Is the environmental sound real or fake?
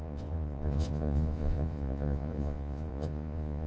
fake